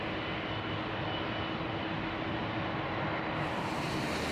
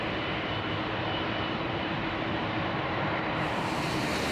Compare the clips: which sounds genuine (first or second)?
first